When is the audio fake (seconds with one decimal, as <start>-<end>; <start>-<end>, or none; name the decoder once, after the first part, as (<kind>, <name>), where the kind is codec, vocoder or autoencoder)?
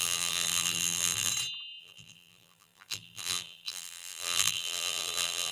0.0-1.3 (vocoder, BigVGAN v2); 1.8-5.5